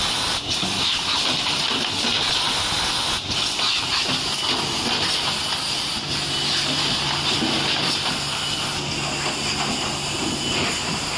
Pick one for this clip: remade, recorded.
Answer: recorded